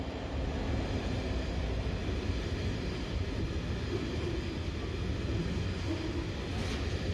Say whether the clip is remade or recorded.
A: recorded